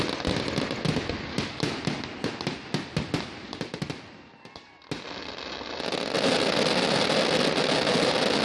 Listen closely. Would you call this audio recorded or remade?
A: recorded